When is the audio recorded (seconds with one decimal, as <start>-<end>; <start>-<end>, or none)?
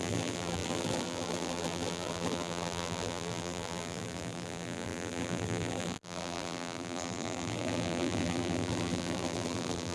none